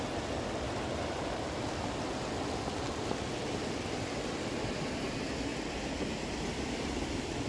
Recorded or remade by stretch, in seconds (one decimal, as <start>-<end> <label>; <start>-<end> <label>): 0.0-7.5 recorded